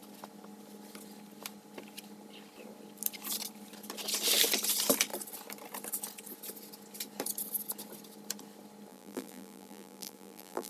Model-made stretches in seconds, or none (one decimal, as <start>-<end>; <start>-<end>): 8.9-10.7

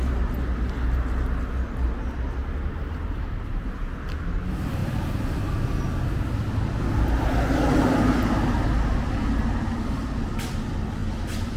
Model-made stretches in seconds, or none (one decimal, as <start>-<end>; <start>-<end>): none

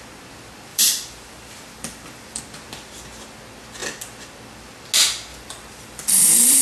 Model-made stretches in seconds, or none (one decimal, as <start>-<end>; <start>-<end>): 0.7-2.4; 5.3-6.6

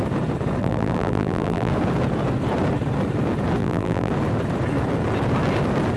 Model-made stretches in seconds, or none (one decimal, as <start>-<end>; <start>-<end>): 0.6-1.7; 3.6-4.1